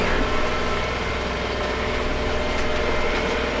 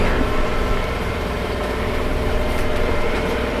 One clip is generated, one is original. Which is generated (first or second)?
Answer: second